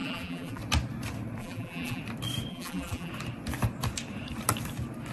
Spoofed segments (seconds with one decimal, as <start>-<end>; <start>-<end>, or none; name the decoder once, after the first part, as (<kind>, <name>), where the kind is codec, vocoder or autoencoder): 0.0-0.6 (vocoder, BigVGAN v2); 1.4-2.0; 2.5-3.1